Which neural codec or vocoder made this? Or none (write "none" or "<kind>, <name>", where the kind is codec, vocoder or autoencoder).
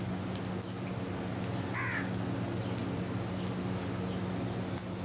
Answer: none